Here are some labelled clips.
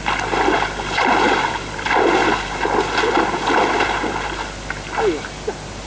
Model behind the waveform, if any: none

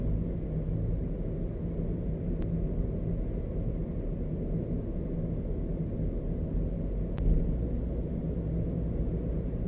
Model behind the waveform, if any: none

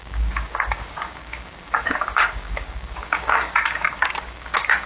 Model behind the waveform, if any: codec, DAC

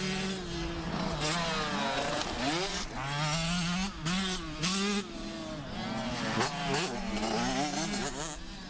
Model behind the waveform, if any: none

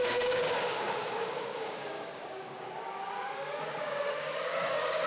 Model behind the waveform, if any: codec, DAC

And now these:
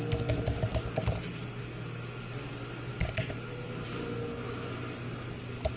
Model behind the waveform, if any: none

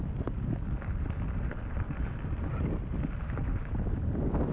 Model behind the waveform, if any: none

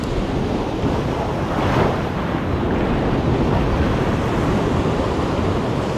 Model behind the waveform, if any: none